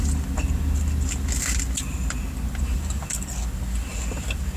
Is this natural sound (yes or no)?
yes